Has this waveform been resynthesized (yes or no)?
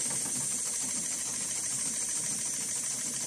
no